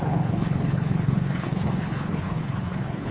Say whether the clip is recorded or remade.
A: remade